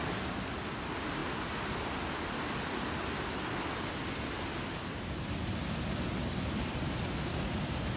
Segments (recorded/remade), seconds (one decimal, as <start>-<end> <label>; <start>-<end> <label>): 0.0-8.0 recorded